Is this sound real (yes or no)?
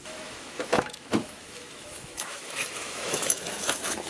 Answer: no